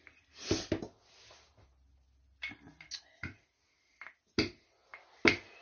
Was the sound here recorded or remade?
recorded